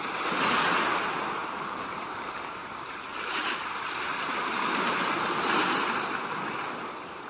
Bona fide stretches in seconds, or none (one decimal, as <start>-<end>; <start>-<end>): 0.0-7.3